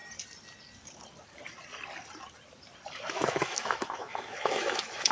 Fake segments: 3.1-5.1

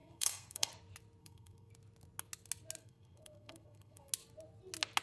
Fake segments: 0.0-0.7; 1.2-1.7; 2.8-4.1